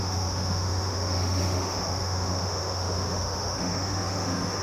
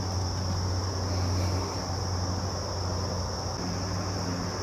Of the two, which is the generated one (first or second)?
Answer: first